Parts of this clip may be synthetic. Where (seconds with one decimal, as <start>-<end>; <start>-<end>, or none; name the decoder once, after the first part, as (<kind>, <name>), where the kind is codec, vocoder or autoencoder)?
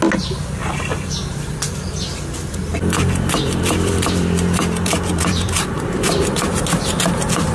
0.6-1.6 (vocoder, BigVGAN v2); 2.7-6.6